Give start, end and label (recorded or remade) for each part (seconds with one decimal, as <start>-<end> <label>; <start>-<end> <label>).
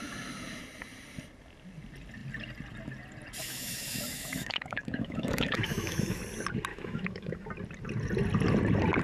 0.0-3.4 recorded; 3.4-6.2 remade; 6.2-6.7 recorded; 6.7-7.5 remade; 7.5-9.0 recorded